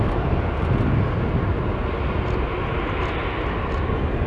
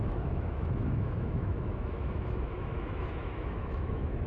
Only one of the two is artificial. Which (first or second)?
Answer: second